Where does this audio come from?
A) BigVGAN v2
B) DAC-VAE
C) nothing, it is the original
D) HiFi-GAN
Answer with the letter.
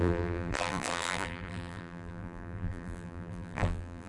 A